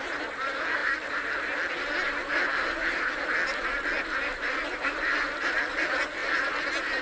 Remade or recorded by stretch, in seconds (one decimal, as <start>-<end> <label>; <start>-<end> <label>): 0.0-7.0 recorded